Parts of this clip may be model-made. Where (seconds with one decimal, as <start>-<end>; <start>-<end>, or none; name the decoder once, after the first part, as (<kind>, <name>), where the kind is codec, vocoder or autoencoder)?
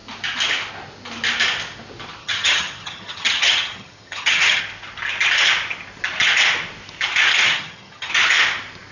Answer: 2.2-4.6 (vocoder, HiFi-GAN); 7.4-8.1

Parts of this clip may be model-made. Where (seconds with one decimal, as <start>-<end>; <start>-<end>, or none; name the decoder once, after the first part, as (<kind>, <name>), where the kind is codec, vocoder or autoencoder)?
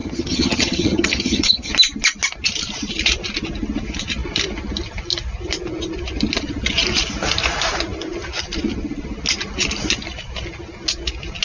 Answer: 0.0-1.7 (vocoder, HiFi-GAN)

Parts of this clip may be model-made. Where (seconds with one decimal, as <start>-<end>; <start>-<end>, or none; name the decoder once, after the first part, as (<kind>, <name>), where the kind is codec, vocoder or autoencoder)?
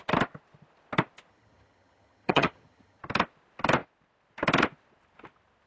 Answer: 1.3-3.0 (vocoder, HiFi-GAN)